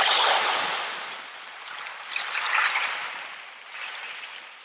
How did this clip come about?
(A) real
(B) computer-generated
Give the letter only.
A